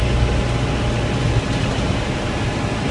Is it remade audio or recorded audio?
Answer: recorded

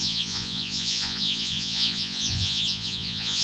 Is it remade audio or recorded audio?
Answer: remade